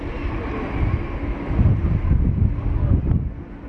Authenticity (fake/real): real